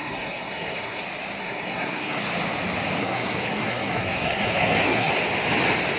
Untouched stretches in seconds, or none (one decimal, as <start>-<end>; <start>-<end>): 1.0-1.4; 2.2-3.0; 5.1-6.0